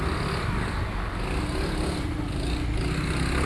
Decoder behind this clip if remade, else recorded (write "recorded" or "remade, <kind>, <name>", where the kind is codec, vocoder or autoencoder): recorded